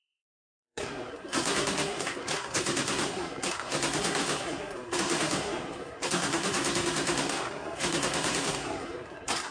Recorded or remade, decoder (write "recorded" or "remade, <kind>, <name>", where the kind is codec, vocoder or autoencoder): remade, codec, SNAC